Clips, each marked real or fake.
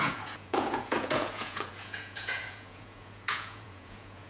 fake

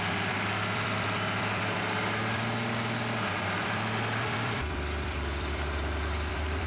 fake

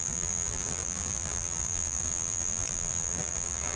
fake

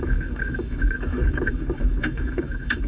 fake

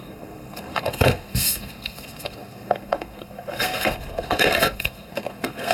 fake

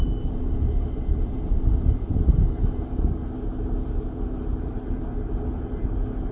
real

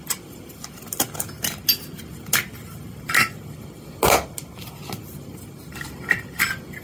real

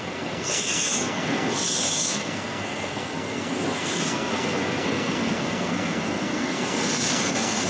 fake